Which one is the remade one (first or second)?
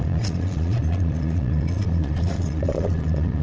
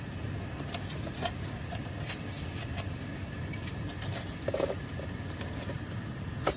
first